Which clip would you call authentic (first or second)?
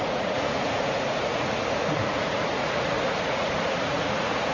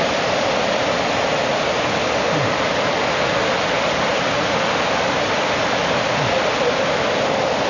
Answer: second